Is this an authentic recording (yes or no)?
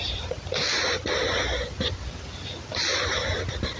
no